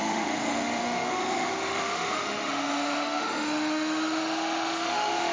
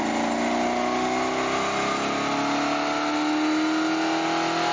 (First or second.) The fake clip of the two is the first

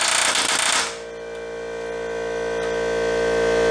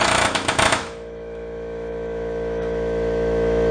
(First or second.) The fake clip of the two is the second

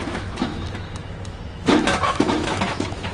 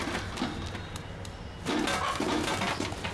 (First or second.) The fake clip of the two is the first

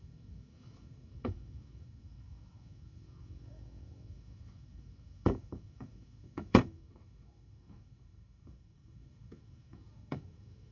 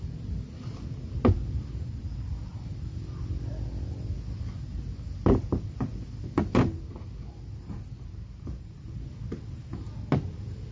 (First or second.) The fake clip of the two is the first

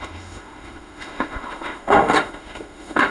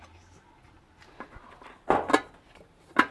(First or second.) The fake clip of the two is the first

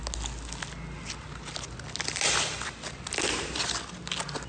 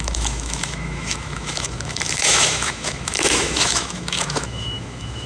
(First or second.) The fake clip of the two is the second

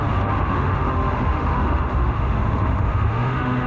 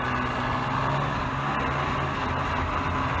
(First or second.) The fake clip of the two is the first